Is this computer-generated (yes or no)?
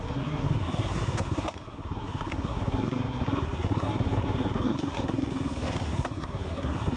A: yes